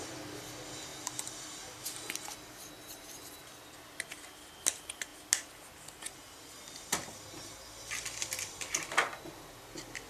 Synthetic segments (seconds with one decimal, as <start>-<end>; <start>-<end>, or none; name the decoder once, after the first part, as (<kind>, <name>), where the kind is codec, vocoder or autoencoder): none